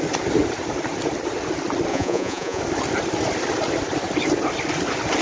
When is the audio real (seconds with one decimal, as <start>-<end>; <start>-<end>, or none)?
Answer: 0.0-1.9; 2.6-5.2